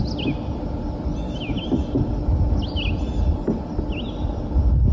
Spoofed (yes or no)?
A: no